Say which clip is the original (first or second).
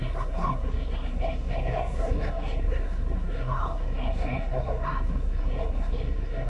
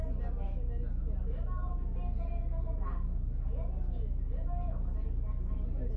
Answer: second